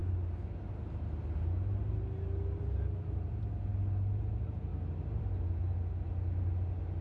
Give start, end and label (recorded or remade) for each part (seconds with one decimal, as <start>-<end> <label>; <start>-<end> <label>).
0.0-7.0 recorded